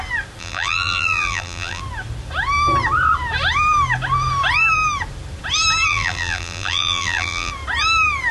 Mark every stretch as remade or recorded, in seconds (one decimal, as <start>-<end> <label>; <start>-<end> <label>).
0.0-0.4 recorded; 0.4-1.8 remade; 1.8-5.9 recorded; 5.9-7.5 remade; 7.5-8.3 recorded